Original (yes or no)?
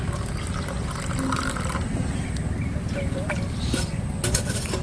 yes